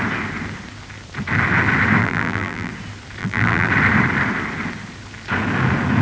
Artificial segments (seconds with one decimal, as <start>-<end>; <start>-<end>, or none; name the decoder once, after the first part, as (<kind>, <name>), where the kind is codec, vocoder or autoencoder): 2.0-2.7 (vocoder, BigVGAN v2); 3.2-3.7

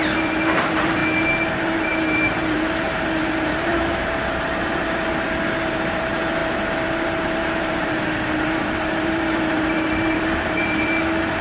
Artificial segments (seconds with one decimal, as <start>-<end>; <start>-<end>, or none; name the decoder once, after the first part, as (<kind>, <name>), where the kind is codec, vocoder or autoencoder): 0.0-1.0 (vocoder, BigVGAN v2); 1.5-11.4

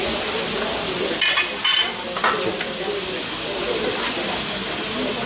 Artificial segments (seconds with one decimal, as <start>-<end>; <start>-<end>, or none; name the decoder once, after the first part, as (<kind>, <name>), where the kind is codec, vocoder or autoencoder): none

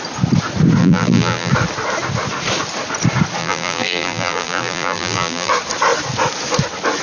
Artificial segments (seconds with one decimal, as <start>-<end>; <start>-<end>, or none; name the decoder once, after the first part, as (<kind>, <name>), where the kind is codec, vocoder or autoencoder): 0.8-1.5 (vocoder, BigVGAN v2); 3.4-5.5